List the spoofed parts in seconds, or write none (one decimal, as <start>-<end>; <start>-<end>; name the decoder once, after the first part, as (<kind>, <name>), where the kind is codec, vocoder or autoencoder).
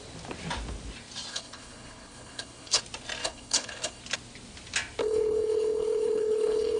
1.3-2.8 (codec, HILCodec); 3.2-4.0; 5.0-6.8